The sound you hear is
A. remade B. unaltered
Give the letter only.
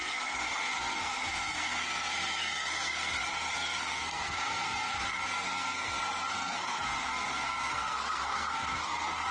A